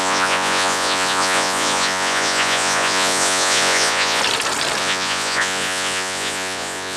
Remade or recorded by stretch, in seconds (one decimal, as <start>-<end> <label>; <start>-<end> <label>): 0.0-4.2 remade; 4.2-4.8 recorded; 4.8-7.0 remade

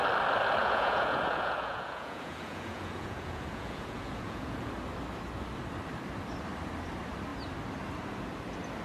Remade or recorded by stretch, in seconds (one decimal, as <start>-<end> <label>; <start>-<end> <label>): 0.0-0.6 recorded; 0.6-4.7 remade; 4.7-8.8 recorded